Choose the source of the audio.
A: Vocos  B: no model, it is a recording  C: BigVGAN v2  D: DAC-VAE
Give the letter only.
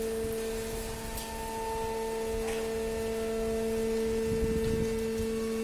B